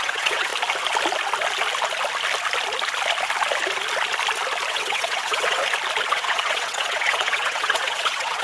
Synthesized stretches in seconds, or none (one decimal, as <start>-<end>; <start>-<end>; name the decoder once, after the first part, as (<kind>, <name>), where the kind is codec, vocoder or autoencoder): 0.0-0.5 (vocoder, WaveNeXt); 4.7-5.6; 6.1-8.4